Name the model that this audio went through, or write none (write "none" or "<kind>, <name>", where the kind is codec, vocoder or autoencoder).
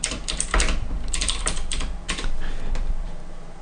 vocoder, BigVGAN v2